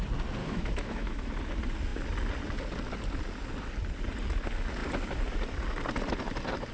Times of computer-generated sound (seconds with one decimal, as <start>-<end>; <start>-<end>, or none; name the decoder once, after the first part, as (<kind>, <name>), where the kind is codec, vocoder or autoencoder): 0.4-1.3 (autoencoder, DAC-VAE)